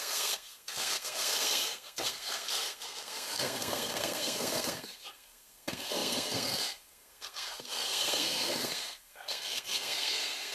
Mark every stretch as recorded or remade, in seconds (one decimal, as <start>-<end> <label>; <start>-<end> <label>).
0.0-10.5 remade